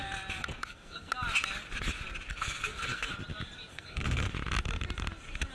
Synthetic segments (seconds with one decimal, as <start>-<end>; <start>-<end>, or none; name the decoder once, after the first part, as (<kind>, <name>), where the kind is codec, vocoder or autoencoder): 0.4-1.1 (codec, SNAC); 2.3-3.1; 3.7-4.3